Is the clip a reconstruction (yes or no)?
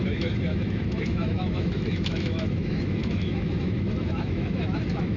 yes